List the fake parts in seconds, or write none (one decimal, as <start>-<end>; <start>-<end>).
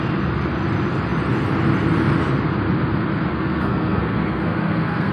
3.3-5.1